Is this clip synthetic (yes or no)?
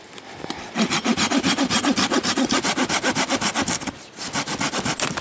no